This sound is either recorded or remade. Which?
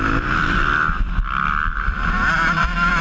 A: remade